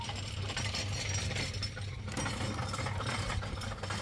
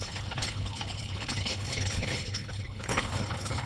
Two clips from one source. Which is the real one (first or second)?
first